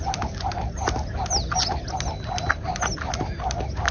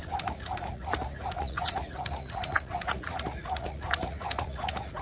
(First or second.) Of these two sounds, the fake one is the second